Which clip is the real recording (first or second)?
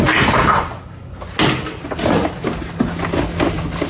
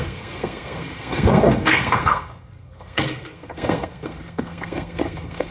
first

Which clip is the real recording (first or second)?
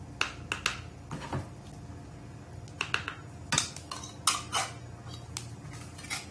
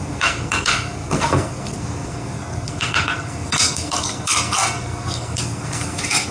first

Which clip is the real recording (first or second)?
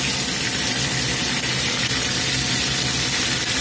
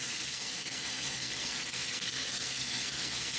first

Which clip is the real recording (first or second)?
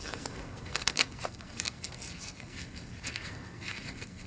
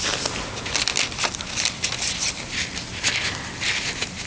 second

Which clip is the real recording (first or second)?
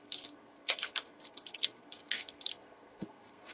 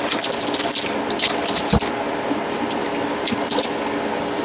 second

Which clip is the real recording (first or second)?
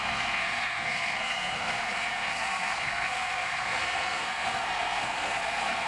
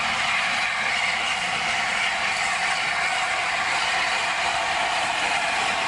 second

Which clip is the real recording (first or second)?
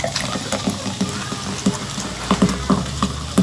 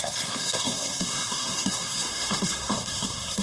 first